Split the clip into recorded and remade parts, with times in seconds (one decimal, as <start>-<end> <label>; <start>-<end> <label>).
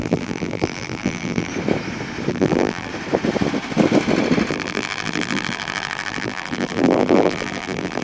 0.0-1.5 remade; 1.5-2.3 recorded; 2.3-2.9 remade; 2.9-4.5 recorded; 4.5-8.0 remade